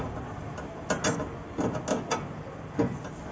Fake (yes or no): no